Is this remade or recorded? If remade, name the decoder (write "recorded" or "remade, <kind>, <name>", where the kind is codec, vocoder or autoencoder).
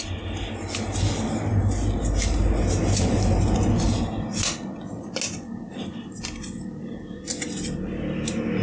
recorded